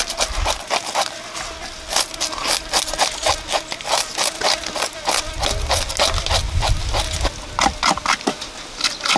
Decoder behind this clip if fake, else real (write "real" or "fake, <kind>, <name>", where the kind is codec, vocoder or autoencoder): real